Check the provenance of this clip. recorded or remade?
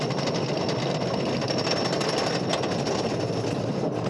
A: recorded